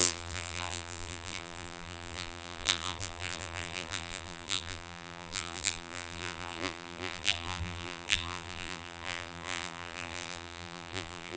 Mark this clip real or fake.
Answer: fake